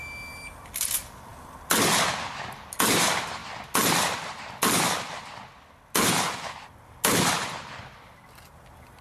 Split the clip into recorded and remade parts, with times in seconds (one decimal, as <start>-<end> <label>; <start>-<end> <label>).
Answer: 0.0-9.0 recorded